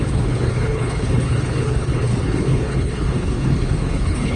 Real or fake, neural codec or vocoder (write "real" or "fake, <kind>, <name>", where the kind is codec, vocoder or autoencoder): fake, codec, HILCodec